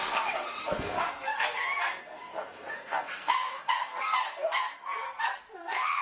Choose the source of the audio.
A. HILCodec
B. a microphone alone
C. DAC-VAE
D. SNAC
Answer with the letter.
D